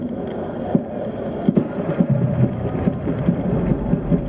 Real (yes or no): yes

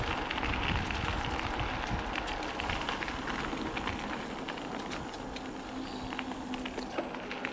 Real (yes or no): yes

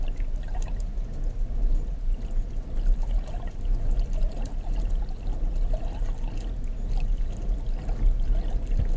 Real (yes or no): yes